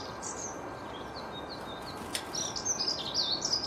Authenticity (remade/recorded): recorded